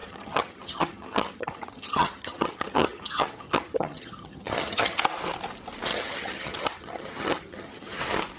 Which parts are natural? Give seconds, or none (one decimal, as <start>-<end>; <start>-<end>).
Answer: 5.0-5.9; 8.0-8.4